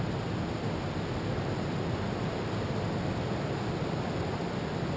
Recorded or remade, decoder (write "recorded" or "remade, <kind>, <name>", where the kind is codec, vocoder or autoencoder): recorded